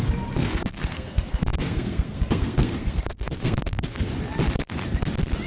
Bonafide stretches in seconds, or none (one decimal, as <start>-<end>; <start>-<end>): 4.1-5.5

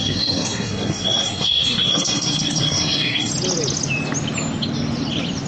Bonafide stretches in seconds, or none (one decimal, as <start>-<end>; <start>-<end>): 3.3-5.5